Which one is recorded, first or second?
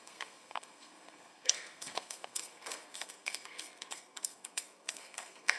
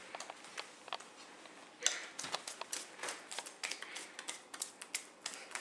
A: second